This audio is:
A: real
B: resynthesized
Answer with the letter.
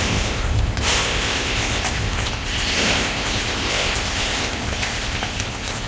B